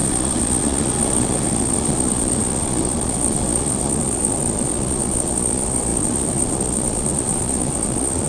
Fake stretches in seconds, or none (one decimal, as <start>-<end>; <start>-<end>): 0.0-8.3